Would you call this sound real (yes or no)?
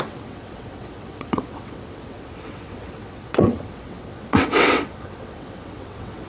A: no